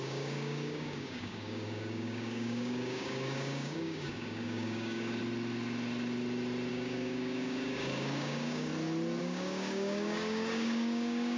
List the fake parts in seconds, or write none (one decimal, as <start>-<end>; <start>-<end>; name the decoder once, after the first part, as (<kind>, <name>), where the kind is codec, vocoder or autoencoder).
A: 0.0-5.2 (codec, DAC); 6.7-8.7; 9.2-11.4